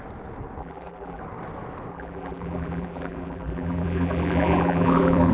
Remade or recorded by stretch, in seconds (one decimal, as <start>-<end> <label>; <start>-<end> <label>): 0.0-0.6 recorded; 0.6-1.2 remade; 1.2-1.9 recorded; 1.9-5.3 remade